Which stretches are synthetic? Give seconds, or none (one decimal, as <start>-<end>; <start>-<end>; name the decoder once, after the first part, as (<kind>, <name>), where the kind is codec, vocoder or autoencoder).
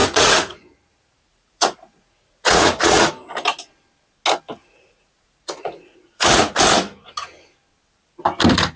0.0-3.1 (vocoder, Vocos); 4.6-6.5